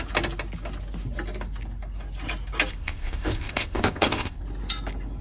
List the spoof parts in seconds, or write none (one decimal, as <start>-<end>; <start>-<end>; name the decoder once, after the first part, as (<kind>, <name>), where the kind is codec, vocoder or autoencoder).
2.7-4.4 (codec, ZipCodec)